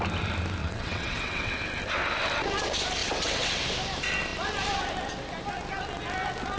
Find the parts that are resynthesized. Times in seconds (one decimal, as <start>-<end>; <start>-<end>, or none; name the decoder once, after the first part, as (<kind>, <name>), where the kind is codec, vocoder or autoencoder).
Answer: 0.6-1.5 (vocoder, WaveNeXt); 3.0-3.6